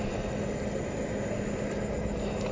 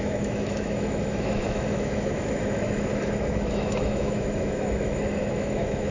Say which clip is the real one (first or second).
first